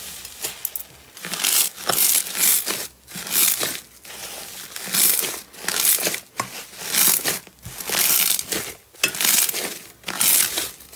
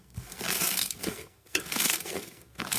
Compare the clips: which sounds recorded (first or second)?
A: first